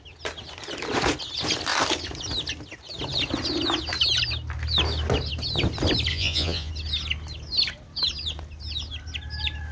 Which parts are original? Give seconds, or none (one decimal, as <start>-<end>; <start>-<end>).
0.0-6.1; 6.7-9.7